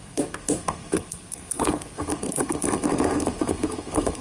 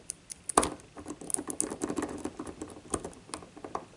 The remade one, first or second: first